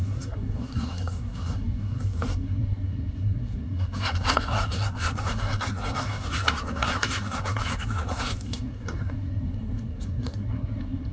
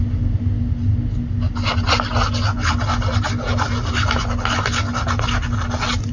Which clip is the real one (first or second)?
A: second